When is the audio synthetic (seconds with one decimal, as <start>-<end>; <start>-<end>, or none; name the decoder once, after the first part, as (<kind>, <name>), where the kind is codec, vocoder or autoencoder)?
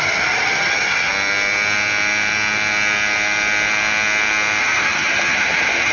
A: 0.0-1.1 (vocoder, HiFi-GAN); 4.6-5.9